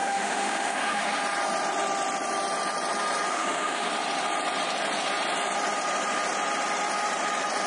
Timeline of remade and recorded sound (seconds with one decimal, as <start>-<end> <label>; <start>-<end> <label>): 0.0-1.2 remade; 1.2-3.3 recorded; 3.3-3.9 remade; 3.9-7.7 recorded